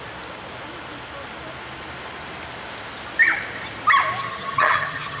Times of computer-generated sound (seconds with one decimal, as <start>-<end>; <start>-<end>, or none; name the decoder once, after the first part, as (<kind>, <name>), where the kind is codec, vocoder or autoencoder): 4.2-5.2 (vocoder, HiFi-GAN)